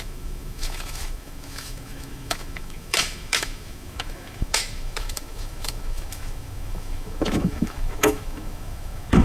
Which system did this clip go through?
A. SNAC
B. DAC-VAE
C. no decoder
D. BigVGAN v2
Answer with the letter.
B